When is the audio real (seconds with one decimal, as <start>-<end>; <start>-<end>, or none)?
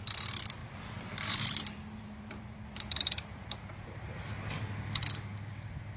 0.0-0.6; 4.2-5.3